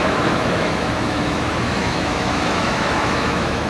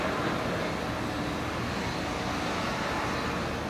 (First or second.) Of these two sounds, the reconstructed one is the first